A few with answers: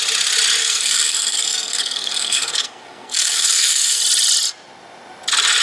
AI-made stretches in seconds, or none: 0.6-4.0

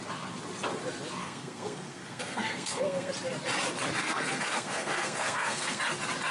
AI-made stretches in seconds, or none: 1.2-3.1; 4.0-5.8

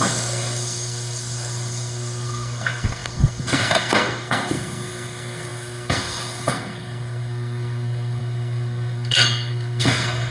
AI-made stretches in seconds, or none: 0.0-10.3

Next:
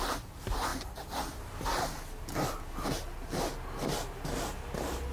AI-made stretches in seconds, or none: none

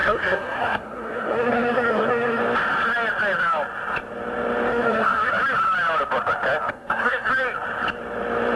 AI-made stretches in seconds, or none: 0.0-2.4; 4.7-5.3; 6.7-7.3

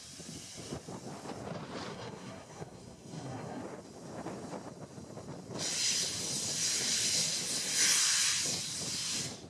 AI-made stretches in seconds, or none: 1.9-3.6